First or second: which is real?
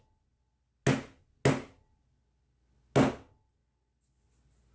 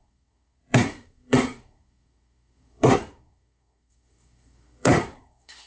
first